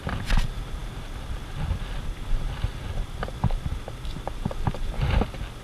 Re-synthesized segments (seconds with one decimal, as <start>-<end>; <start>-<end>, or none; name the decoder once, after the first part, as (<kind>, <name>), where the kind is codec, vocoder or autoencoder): none